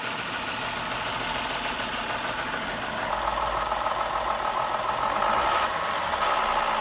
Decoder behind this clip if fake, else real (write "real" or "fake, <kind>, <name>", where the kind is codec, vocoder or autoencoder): real